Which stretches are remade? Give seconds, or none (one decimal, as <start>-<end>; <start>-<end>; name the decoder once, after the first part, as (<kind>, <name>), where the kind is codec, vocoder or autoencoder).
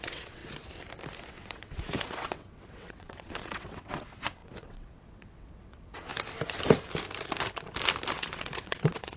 0.0-0.4 (vocoder, WaveNeXt); 1.3-6.1; 8.1-9.2